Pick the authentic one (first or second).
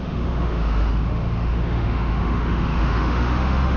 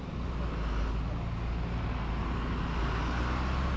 second